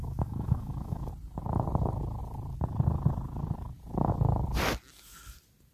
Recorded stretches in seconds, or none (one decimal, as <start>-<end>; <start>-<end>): 1.1-5.7